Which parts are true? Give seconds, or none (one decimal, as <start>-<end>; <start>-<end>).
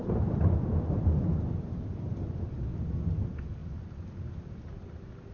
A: 0.0-5.3